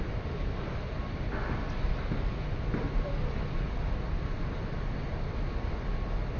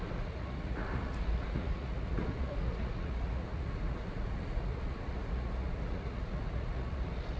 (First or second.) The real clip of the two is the first